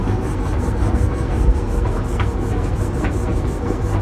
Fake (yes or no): yes